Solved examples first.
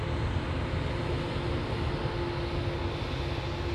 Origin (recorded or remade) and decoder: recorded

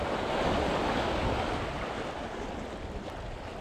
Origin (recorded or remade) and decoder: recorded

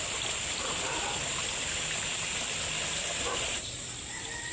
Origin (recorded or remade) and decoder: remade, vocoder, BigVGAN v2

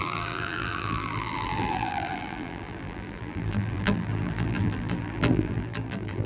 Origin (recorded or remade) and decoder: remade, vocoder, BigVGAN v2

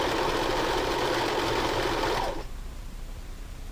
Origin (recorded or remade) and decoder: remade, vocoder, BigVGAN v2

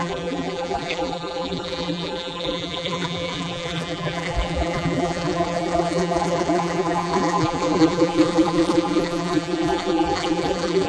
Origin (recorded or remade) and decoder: remade, vocoder, BigVGAN v2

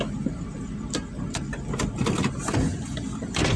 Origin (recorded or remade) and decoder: recorded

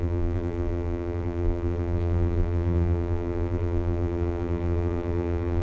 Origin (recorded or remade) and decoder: remade, vocoder, BigVGAN v2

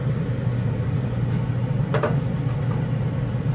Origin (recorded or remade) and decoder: remade, vocoder, BigVGAN v2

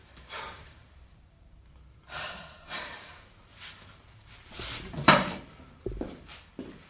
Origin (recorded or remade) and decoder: remade, vocoder, BigVGAN v2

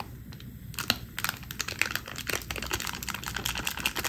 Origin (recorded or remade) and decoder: recorded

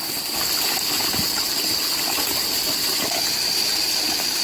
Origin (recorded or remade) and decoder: remade, vocoder, BigVGAN v2